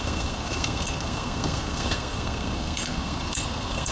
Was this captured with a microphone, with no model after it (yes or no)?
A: no